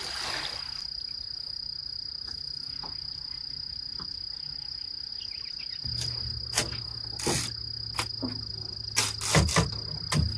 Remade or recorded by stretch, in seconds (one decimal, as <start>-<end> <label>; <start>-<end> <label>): 0.0-10.4 recorded